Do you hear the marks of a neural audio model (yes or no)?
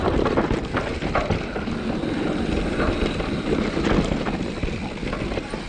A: no